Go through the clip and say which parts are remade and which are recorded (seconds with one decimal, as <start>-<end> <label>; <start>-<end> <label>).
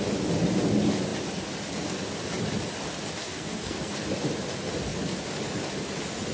0.0-3.2 recorded; 3.2-3.9 remade; 3.9-6.3 recorded